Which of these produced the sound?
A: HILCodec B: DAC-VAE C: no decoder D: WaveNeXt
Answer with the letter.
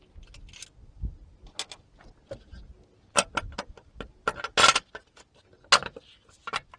C